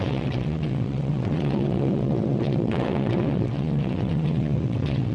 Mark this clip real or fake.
fake